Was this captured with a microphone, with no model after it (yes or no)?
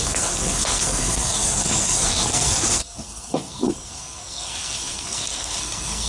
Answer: no